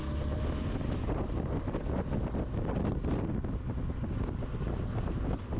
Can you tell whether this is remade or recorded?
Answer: recorded